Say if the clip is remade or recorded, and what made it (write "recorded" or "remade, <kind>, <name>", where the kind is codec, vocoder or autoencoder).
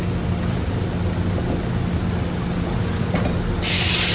recorded